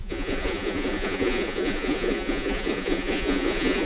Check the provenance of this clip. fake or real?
fake